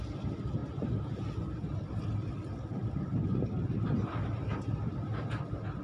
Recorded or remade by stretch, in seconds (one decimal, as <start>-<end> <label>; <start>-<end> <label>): 0.0-5.8 recorded